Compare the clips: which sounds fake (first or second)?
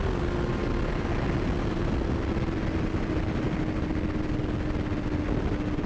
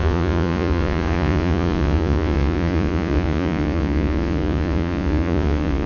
second